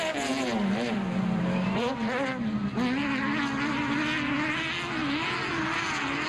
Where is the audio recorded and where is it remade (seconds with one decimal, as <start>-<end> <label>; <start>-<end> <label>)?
0.0-2.3 remade; 2.3-6.3 recorded